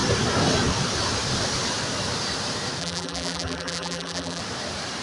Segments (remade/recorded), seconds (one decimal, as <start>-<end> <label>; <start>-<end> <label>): 0.0-2.8 recorded; 2.8-4.4 remade; 4.4-5.0 recorded